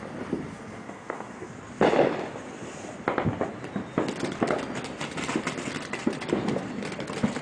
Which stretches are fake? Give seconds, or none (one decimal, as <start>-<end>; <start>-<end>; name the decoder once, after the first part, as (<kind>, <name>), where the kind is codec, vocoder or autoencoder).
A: 0.5-1.5 (codec, SNAC)